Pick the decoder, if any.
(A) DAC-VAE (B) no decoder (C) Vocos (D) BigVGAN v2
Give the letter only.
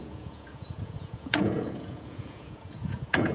C